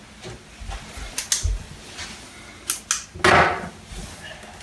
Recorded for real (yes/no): yes